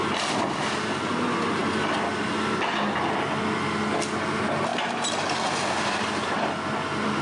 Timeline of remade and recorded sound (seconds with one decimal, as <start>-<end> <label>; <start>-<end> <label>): 0.0-7.2 recorded